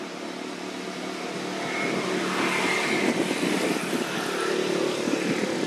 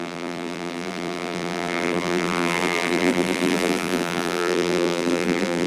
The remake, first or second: second